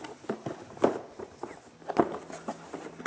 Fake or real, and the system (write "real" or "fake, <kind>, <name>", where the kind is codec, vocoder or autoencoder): real